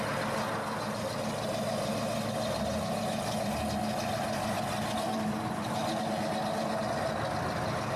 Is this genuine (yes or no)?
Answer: yes